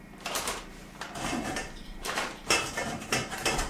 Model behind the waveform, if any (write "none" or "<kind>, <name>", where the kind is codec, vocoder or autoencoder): vocoder, BigVGAN v2